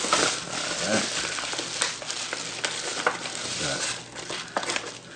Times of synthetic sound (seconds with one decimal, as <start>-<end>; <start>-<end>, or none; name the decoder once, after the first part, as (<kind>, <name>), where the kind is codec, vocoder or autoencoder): 2.9-3.8 (vocoder, BigVGAN v2)